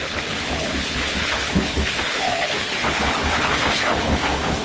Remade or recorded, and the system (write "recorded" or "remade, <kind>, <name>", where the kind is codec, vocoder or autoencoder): remade, codec, HILCodec